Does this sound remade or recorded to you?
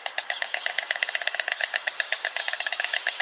remade